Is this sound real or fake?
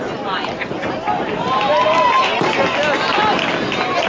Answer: real